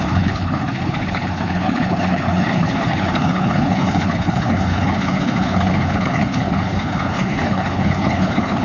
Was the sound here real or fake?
fake